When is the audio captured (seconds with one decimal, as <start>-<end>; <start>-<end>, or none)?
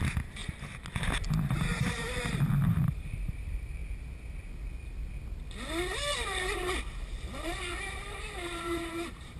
0.4-2.8; 3.8-7.9